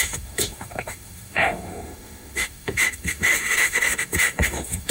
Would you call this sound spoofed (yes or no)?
yes